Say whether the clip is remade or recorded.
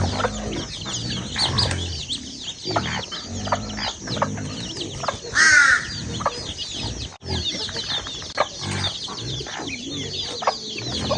recorded